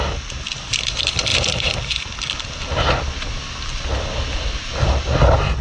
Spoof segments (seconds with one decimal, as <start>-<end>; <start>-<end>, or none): none